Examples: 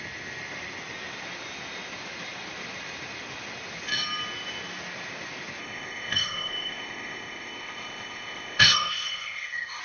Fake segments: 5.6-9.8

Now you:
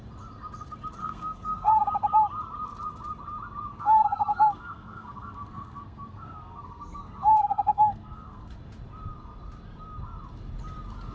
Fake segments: 1.0-1.7; 3.7-8.6

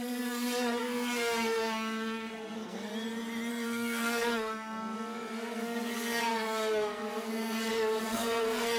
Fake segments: 0.0-2.9; 3.5-8.8